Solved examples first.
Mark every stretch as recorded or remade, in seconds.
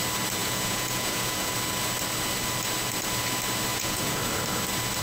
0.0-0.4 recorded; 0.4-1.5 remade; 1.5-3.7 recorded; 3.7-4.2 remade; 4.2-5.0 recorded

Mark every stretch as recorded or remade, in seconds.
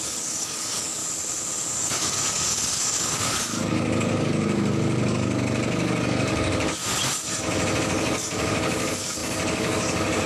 0.0-1.0 remade; 1.0-1.8 recorded; 1.8-6.8 remade; 6.8-7.8 recorded; 7.8-10.3 remade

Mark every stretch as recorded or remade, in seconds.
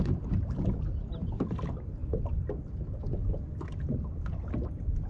0.0-5.1 recorded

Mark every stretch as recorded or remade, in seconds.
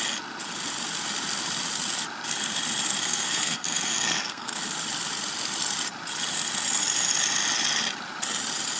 0.0-3.0 recorded; 3.0-4.6 remade; 4.6-8.8 recorded